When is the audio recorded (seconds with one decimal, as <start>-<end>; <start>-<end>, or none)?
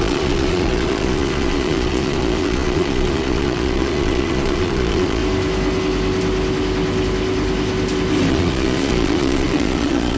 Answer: 5.2-8.3